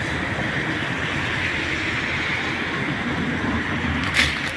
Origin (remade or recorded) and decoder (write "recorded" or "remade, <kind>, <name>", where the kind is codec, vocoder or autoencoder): recorded